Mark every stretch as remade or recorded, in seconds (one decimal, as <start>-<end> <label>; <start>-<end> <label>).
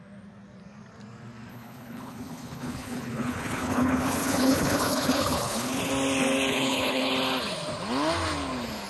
0.0-1.5 recorded; 1.5-5.9 remade; 5.9-6.5 recorded; 6.5-7.1 remade; 7.1-8.9 recorded